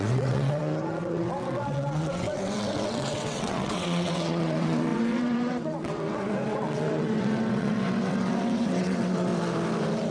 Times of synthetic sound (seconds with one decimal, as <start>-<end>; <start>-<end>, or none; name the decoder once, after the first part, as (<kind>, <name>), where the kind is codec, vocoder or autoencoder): 0.0-9.3 (vocoder, WaveNeXt)

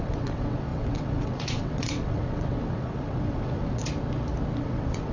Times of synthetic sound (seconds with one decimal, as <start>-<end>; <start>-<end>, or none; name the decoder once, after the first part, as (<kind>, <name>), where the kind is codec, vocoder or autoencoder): 0.0-3.8 (vocoder, WaveNeXt); 4.6-5.1

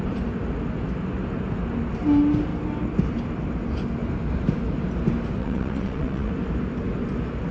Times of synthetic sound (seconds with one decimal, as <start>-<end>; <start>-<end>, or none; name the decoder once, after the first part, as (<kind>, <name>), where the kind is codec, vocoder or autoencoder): 5.4-6.3 (vocoder, WaveNeXt)

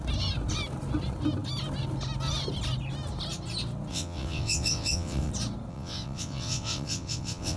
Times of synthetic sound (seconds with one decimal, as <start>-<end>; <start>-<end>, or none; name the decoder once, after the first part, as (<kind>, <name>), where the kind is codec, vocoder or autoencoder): 3.9-5.3 (vocoder, WaveNeXt); 5.7-7.6

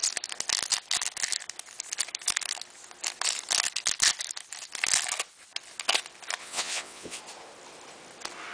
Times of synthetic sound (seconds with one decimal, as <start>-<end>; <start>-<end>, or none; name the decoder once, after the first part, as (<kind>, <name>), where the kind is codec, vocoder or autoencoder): 6.4-7.2 (vocoder, WaveNeXt)

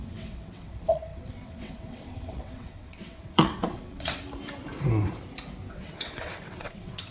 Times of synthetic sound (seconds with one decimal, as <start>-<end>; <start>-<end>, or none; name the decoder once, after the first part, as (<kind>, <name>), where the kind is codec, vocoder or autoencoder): 0.0-4.2 (vocoder, WaveNeXt); 5.7-7.1

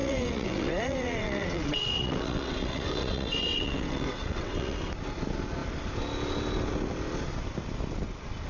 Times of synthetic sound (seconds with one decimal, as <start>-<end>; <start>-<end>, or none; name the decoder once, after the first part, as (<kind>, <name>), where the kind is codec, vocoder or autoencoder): 0.0-4.9 (vocoder, WaveNeXt)

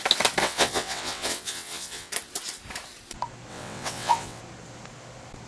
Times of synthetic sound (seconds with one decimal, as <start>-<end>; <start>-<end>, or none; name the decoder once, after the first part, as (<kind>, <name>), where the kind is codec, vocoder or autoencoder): 0.4-2.1 (vocoder, WaveNeXt); 3.5-4.4